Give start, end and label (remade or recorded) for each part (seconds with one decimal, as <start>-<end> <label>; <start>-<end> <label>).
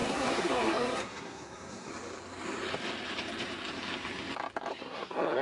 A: 0.0-1.9 remade; 1.9-4.7 recorded; 4.7-5.4 remade